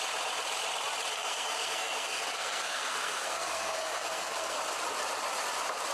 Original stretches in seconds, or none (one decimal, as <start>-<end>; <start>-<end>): 0.0-1.1; 4.6-5.9